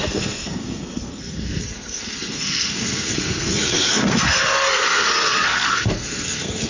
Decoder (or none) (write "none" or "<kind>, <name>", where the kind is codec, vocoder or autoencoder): codec, SNAC